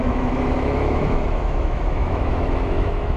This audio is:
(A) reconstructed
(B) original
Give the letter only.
A